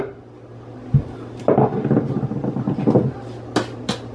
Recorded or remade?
recorded